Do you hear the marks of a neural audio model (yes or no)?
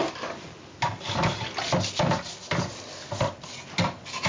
no